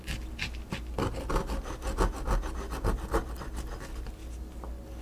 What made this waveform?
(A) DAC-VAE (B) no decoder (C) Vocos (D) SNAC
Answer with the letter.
B